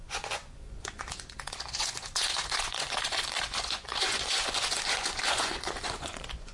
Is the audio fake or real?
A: fake